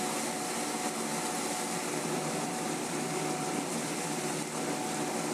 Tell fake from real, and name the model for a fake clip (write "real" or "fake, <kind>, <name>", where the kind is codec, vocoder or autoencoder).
real